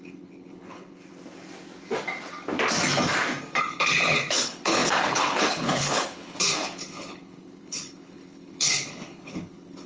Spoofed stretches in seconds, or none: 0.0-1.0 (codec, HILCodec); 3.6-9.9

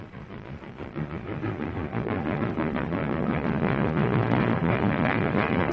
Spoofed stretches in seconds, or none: 0.0-5.7 (vocoder, Vocos)

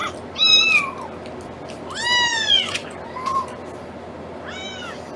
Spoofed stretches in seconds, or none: 2.3-3.0 (vocoder, Vocos)